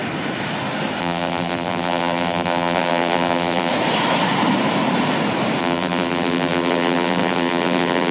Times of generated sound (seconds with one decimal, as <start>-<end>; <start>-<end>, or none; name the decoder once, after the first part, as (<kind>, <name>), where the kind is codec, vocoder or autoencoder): 1.0-3.7 (vocoder, BigVGAN v2); 5.6-8.1